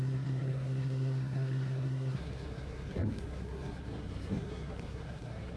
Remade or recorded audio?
remade